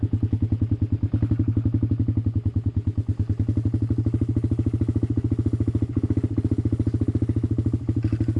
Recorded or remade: recorded